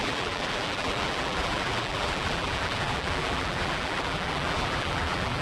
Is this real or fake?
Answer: fake